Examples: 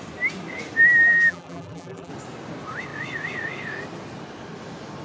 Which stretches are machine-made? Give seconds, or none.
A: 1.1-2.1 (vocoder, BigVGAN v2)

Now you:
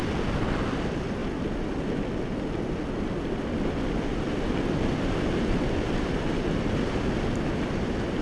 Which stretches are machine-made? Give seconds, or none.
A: 0.7-1.2 (vocoder, BigVGAN v2); 6.1-8.2

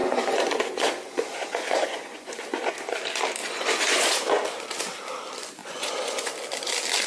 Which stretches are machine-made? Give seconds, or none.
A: 0.0-2.7 (vocoder, Vocos); 3.4-4.3; 5.6-6.3

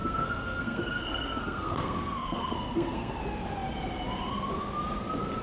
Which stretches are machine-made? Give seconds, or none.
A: 0.0-3.2 (codec, SNAC)

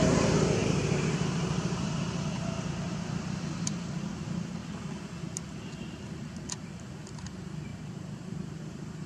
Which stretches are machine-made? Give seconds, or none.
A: 0.6-3.7 (vocoder, BigVGAN v2); 7.7-8.4

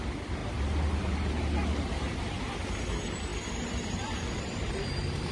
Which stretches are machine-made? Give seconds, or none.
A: none

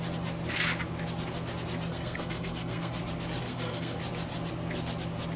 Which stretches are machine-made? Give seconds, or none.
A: 1.9-3.0 (codec, SNAC); 3.4-4.0